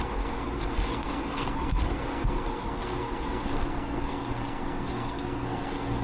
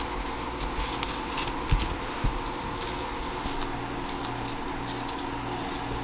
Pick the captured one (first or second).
second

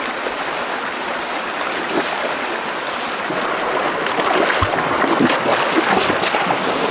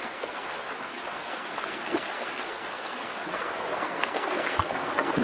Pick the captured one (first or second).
first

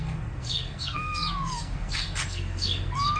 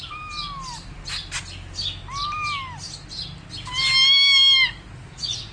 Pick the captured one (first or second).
second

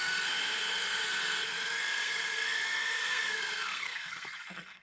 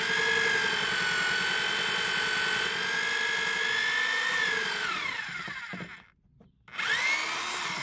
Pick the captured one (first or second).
second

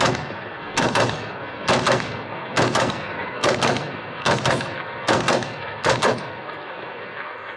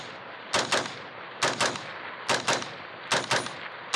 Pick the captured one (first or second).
second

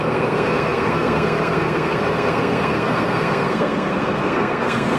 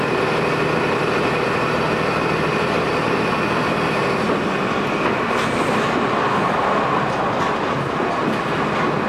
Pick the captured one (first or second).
second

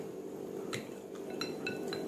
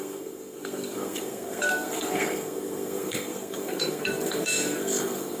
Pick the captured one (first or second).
first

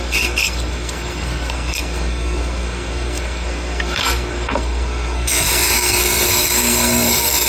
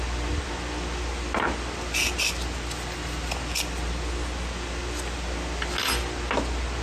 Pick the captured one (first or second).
second